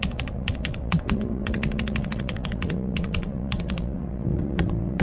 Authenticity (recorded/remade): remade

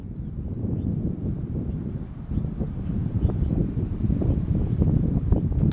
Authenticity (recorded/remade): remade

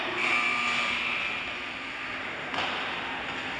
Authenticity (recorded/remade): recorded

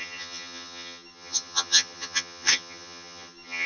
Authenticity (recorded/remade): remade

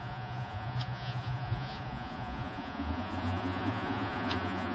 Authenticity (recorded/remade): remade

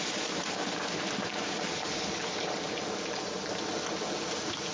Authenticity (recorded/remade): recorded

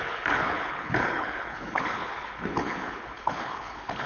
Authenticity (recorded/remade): remade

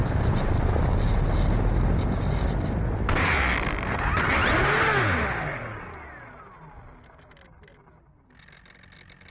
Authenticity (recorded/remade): recorded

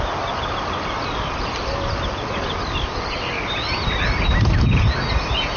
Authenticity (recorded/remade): recorded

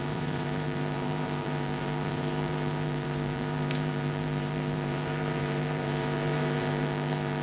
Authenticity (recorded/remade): remade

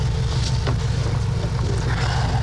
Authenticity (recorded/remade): recorded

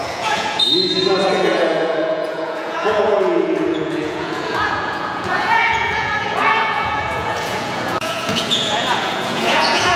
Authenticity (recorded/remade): remade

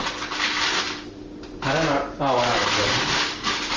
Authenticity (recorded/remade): recorded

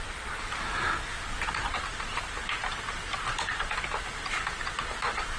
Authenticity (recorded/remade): recorded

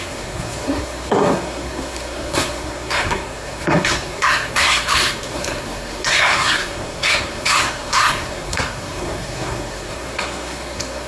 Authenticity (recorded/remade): remade